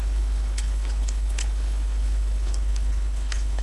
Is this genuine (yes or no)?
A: no